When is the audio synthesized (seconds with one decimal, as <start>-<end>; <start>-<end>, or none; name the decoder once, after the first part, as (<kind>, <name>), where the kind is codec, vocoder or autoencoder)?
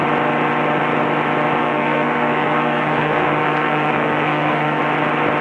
1.6-4.8 (codec, SNAC)